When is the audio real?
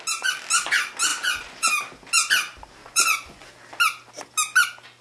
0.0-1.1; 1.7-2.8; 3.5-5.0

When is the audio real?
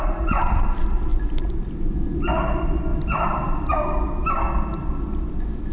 0.0-5.7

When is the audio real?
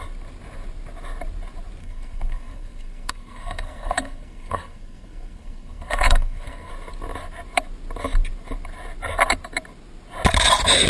0.0-1.8; 6.7-10.9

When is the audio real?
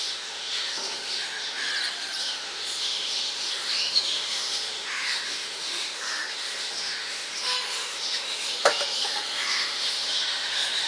1.7-2.2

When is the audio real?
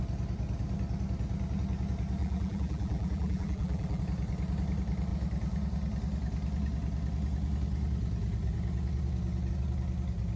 0.0-2.2; 4.0-10.4